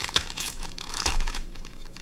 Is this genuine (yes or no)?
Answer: no